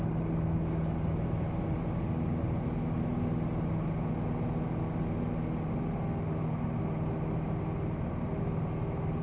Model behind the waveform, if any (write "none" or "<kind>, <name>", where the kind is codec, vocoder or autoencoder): none